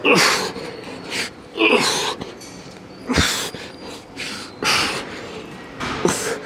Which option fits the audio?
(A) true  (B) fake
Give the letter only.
A